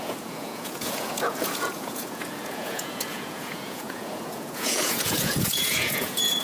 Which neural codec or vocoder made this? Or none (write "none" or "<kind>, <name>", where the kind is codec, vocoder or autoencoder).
vocoder, Vocos